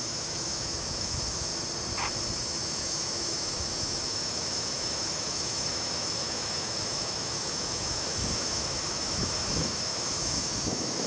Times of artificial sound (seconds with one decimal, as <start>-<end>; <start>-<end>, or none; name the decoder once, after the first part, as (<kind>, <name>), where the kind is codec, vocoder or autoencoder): 0.0-1.5 (autoencoder, DAC-VAE); 2.4-11.1